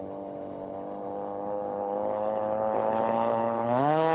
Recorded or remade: remade